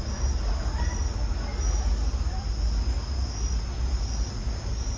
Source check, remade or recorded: recorded